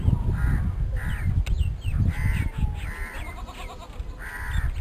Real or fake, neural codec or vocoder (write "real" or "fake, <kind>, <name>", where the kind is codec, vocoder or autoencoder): real